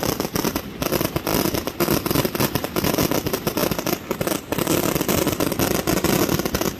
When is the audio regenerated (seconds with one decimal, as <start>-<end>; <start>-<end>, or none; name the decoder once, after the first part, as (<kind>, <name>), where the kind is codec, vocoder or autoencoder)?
0.0-1.3 (vocoder, BigVGAN v2); 3.0-3.6

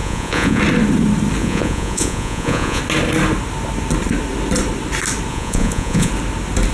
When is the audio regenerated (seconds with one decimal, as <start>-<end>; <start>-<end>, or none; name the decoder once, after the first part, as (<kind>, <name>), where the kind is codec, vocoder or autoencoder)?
0.0-0.6 (vocoder, Vocos); 1.4-2.8; 5.3-6.1

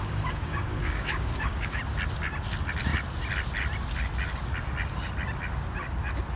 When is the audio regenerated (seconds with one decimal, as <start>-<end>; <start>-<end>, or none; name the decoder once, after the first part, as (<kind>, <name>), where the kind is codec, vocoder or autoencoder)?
0.0-1.8 (codec, DAC)

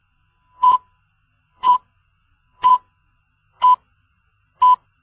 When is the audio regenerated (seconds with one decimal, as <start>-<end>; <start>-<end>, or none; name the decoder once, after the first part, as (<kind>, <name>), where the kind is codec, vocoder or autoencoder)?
0.0-1.0 (vocoder, Vocos); 1.5-3.2

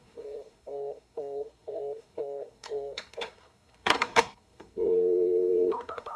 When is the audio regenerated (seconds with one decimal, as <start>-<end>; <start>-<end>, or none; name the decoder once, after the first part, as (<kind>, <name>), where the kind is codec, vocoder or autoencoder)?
0.0-6.2 (codec, SNAC)

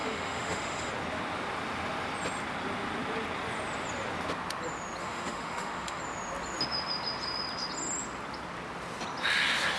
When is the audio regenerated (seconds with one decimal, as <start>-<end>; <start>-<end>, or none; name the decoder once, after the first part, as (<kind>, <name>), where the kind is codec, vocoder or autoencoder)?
0.0-0.9 (autoencoder, DAC-VAE); 5.0-6.0

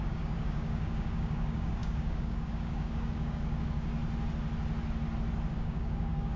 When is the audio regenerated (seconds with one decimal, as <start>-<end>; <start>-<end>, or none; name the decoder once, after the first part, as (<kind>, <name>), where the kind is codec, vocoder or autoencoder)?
0.0-4.0 (codec, DAC); 5.5-6.4